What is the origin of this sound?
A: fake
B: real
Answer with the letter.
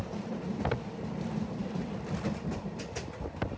B